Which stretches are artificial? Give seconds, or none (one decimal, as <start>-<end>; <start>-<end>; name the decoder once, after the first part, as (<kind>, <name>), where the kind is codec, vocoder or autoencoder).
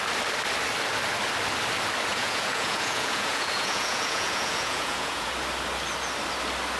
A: 2.1-5.3 (vocoder, Vocos)